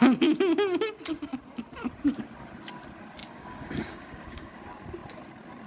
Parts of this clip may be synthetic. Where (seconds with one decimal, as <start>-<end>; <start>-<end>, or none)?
3.2-4.6